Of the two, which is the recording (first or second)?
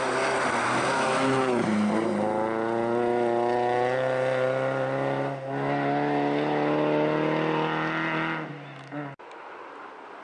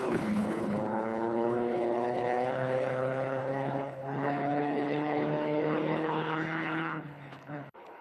first